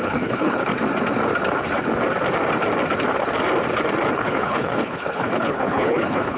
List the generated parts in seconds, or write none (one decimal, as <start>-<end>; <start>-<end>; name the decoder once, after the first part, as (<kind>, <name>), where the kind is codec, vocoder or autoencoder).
0.0-0.7 (codec, HILCodec); 4.1-6.4